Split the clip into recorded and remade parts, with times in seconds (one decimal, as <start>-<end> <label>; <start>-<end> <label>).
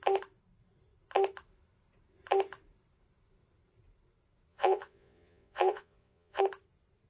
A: 0.0-4.5 recorded; 4.5-6.4 remade; 6.4-7.1 recorded